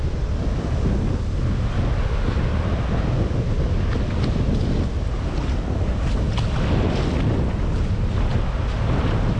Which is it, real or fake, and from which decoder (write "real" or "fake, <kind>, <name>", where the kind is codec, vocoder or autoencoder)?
real